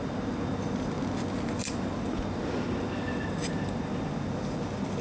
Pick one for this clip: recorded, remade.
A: recorded